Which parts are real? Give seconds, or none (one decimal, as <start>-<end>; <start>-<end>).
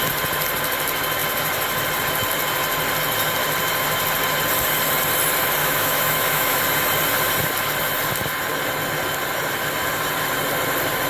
0.0-5.6; 6.6-11.1